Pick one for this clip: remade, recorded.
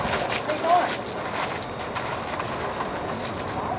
recorded